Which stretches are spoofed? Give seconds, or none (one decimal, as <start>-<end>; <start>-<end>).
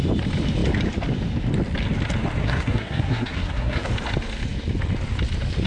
2.4-3.9